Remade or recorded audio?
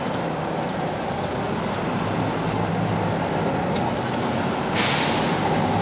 recorded